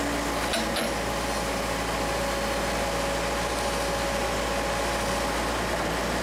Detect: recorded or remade recorded